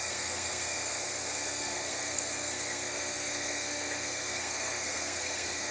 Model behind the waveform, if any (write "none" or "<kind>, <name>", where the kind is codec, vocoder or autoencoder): codec, SNAC